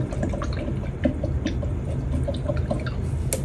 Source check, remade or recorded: recorded